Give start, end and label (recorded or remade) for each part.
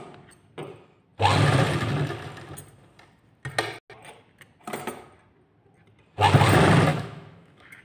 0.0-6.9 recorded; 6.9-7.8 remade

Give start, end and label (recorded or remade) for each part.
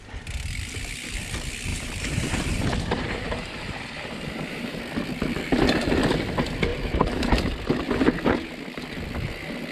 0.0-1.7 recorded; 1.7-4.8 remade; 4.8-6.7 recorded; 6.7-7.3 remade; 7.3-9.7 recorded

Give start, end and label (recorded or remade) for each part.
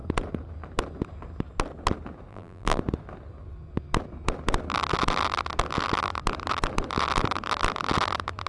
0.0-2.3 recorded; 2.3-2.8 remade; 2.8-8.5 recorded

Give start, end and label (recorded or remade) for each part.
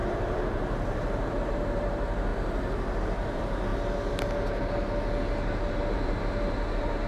0.0-2.3 remade; 2.3-3.0 recorded; 3.0-3.7 remade; 3.7-5.7 recorded; 5.7-7.1 remade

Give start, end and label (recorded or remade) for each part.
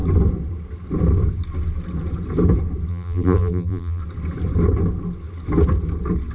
0.0-2.9 recorded; 2.9-4.0 remade; 4.0-6.3 recorded